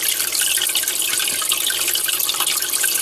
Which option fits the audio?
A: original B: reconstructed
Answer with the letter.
A